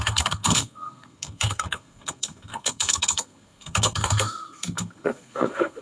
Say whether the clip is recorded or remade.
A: remade